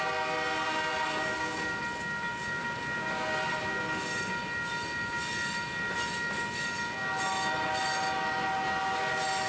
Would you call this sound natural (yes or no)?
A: yes